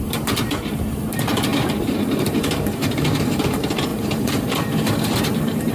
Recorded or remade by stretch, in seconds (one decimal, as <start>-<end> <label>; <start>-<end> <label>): 0.0-5.7 remade